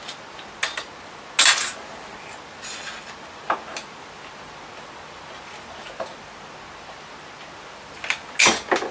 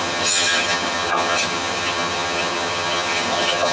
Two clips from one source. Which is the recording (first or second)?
first